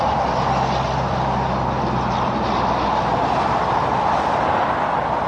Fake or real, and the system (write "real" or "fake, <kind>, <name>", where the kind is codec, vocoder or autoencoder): real